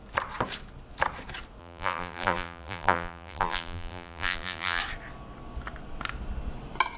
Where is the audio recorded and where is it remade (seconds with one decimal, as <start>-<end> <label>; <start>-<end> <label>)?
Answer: 0.0-1.6 recorded; 1.6-4.8 remade; 4.8-7.0 recorded